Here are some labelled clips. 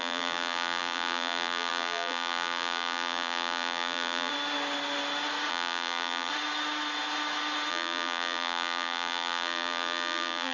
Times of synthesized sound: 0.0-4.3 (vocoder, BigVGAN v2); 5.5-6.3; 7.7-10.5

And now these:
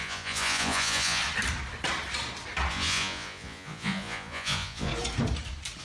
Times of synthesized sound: 0.0-1.2 (vocoder, Vocos); 2.7-4.9

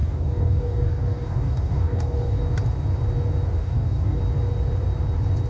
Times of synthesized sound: 0.0-2.4 (codec, DAC); 3.6-4.2

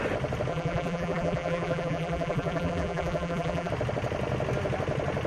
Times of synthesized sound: 0.5-3.7 (vocoder, BigVGAN v2)

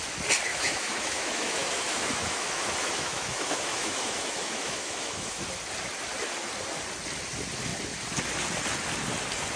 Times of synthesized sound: 0.5-5.4 (autoencoder, DAC-VAE)

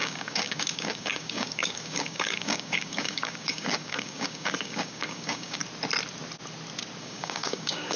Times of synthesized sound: 0.0-5.6 (codec, DAC); 7.0-8.0

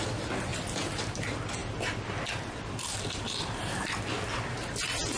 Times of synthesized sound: none